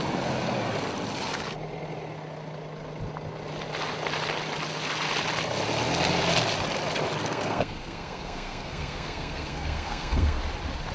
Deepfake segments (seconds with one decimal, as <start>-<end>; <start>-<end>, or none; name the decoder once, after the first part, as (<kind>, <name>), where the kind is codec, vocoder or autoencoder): 7.2-10.4 (codec, SNAC)